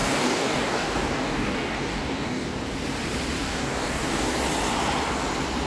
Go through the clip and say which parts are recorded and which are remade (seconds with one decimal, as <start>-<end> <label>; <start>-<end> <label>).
0.0-2.5 remade; 2.5-3.4 recorded; 3.4-4.3 remade; 4.3-5.7 recorded